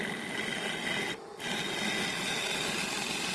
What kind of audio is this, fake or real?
real